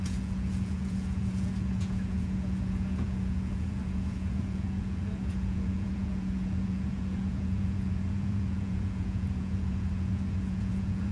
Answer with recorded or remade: remade